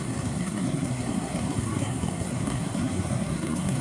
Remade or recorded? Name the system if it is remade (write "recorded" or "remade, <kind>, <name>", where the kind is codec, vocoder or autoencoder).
remade, codec, SNAC